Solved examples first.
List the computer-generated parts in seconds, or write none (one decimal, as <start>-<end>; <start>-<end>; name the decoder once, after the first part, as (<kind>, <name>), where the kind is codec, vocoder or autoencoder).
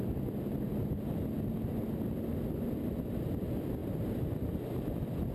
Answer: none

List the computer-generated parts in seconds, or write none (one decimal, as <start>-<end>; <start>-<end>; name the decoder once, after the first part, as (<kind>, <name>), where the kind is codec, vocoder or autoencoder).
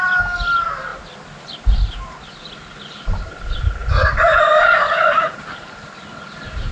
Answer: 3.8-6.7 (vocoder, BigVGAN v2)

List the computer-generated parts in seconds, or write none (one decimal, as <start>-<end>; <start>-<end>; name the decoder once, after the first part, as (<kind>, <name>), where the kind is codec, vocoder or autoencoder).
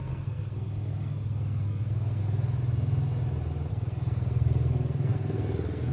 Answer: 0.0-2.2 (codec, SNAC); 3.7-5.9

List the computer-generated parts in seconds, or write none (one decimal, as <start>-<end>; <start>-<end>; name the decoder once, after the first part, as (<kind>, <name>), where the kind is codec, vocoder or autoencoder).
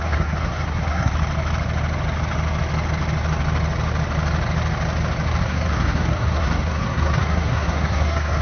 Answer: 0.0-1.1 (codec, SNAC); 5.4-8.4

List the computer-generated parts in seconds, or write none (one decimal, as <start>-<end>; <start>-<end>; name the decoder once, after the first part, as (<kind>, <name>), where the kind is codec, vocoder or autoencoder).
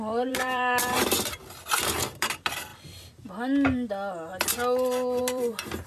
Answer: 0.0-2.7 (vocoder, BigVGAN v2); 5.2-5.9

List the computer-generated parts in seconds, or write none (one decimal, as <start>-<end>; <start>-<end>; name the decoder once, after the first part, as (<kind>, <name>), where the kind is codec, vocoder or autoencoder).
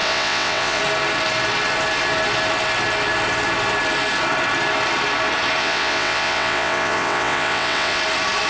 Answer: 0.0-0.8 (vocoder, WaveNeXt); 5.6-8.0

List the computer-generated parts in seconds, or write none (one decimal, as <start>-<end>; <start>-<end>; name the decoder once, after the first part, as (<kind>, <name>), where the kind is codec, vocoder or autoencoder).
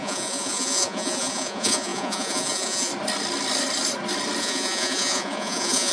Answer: 0.0-2.9 (vocoder, Vocos); 4.4-5.9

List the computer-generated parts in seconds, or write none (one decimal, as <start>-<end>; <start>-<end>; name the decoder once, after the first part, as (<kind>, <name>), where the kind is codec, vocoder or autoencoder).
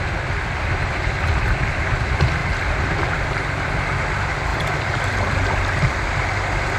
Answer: none